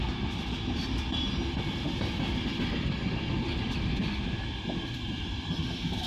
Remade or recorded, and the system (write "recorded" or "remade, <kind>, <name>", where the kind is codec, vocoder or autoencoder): recorded